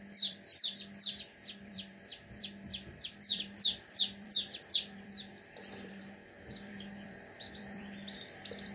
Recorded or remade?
remade